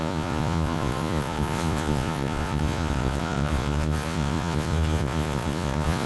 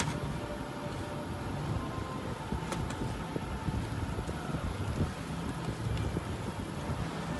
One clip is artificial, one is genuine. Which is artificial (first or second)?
first